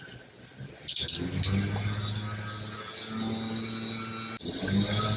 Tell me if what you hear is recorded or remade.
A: recorded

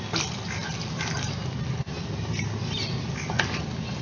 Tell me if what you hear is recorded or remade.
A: recorded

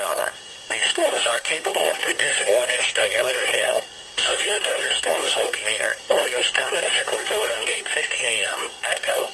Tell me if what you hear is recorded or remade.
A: remade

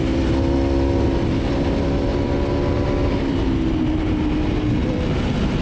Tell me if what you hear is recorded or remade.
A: recorded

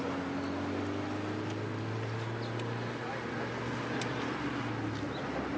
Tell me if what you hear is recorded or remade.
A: recorded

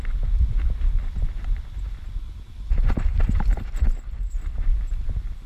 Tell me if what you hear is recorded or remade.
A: remade